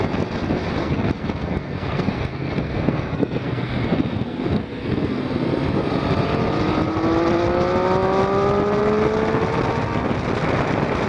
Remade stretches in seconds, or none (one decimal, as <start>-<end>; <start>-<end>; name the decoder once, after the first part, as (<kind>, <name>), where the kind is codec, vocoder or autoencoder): 0.8-5.2 (codec, SNAC)